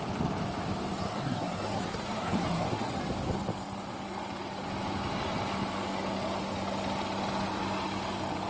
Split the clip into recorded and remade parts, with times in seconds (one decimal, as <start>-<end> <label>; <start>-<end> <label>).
0.0-1.0 recorded; 1.0-2.9 remade; 2.9-8.5 recorded